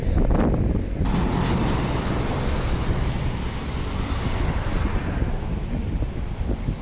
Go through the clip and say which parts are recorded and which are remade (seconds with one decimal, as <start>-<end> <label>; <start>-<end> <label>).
0.0-6.8 recorded